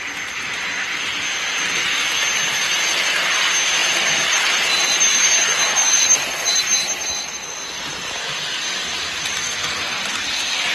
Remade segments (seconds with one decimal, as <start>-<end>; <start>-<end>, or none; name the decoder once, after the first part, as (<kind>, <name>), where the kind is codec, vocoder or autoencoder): 9.4-10.0 (codec, SNAC)